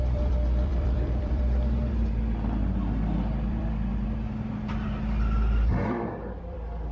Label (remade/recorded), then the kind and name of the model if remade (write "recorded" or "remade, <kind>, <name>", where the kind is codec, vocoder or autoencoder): remade, vocoder, BigVGAN v2